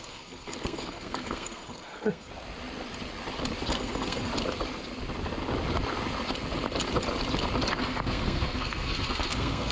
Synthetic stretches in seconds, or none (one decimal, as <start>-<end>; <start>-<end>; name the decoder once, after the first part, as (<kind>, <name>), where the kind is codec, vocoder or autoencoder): 0.0-2.3 (codec, SNAC); 3.7-4.3; 7.8-9.7